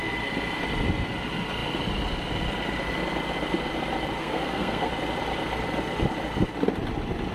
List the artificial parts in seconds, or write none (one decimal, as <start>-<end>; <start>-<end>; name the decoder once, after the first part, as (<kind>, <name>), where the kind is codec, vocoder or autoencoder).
4.2-4.9 (codec, SNAC)